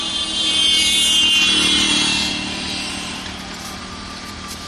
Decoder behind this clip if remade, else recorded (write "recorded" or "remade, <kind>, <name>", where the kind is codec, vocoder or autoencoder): remade, vocoder, BigVGAN v2